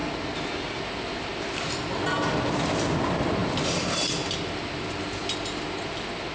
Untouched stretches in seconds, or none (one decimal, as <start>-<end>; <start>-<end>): 0.0-6.3